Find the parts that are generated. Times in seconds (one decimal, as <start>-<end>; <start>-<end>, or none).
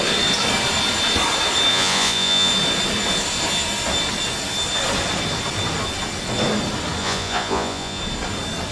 1.7-2.5; 7.0-8.0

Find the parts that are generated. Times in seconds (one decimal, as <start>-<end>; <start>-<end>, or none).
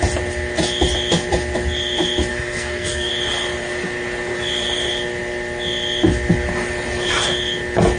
2.3-3.1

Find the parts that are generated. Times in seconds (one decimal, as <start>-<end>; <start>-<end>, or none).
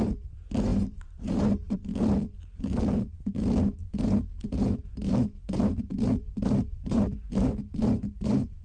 0.0-1.9; 3.6-8.6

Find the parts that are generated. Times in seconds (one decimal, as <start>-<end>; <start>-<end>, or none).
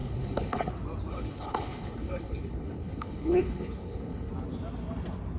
0.0-0.7; 1.1-4.3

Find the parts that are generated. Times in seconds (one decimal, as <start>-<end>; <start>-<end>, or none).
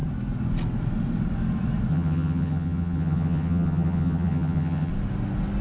1.9-4.9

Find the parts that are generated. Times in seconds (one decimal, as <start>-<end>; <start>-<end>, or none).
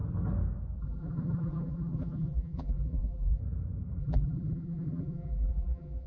0.8-3.4; 4.0-6.1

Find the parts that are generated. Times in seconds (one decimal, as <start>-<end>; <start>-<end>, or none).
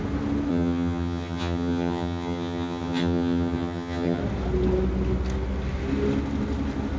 0.5-4.2